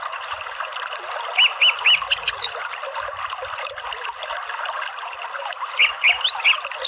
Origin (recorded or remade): recorded